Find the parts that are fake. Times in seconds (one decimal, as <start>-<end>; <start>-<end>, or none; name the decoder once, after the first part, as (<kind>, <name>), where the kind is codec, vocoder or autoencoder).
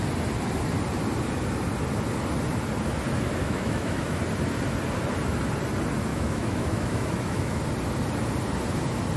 3.4-4.2 (autoencoder, DAC-VAE); 6.1-7.6